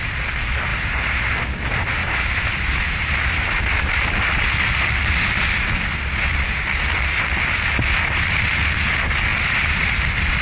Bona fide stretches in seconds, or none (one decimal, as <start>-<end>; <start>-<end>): 0.0-2.0; 5.0-9.3; 10.0-10.4